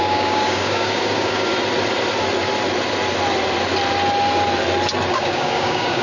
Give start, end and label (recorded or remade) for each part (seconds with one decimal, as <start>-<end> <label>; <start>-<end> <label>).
0.0-1.5 remade; 1.5-5.1 recorded; 5.1-6.0 remade